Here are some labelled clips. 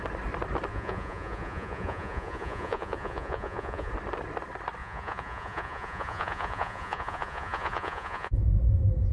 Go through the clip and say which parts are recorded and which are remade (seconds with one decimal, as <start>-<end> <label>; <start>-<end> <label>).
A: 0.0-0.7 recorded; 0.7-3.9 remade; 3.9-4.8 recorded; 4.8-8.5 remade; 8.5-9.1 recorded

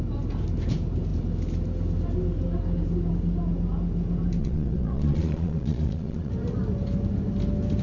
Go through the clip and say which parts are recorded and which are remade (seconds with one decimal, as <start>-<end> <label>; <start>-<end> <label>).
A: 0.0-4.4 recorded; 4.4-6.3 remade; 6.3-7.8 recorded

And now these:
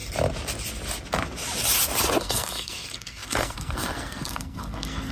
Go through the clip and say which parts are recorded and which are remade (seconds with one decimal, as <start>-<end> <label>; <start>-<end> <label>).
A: 0.0-2.2 recorded; 2.2-5.1 remade